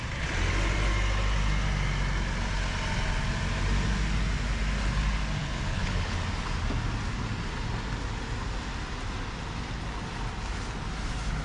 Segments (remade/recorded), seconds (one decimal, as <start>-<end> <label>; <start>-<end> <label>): 0.0-5.4 recorded; 5.4-6.2 remade; 6.2-11.4 recorded